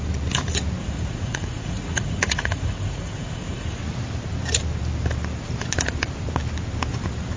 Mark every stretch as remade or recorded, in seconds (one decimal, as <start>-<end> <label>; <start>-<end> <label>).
0.0-0.8 recorded; 0.8-3.8 remade; 3.8-7.4 recorded